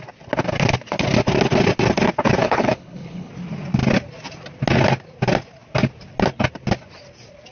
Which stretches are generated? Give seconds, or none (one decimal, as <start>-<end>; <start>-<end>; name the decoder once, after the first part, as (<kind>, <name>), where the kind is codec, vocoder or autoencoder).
2.4-3.3 (codec, HILCodec)